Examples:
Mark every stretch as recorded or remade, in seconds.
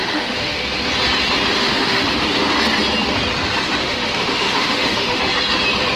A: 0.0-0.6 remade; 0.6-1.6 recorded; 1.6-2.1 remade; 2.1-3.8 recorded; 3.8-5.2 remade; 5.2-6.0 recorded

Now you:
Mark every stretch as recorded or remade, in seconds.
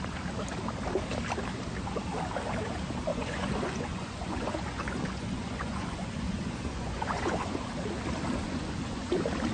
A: 0.0-3.1 recorded; 3.1-7.7 remade; 7.7-8.4 recorded; 8.4-9.1 remade; 9.1-9.5 recorded